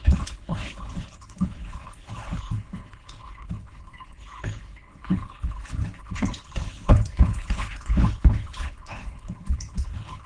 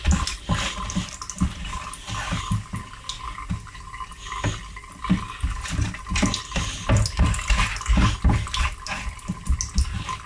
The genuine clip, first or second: second